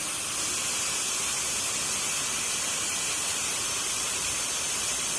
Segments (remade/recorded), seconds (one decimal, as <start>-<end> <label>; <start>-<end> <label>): 0.0-5.2 recorded